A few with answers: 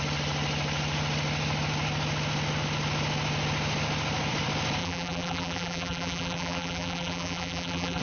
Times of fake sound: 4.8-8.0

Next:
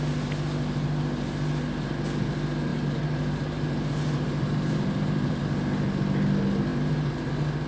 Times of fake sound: 2.7-5.4; 6.7-7.3

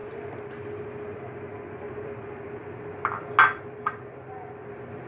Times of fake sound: 1.8-2.6; 4.3-5.1

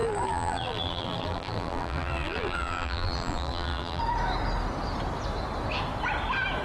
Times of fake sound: 0.0-4.0

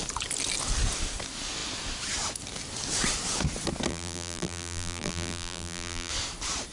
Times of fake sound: 3.9-6.1

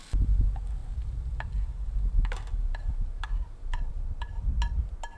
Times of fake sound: none

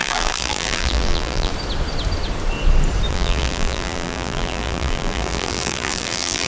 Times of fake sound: 0.0-1.5; 3.1-6.5

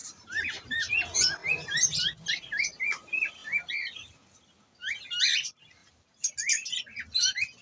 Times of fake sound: 0.0-0.9; 5.8-6.3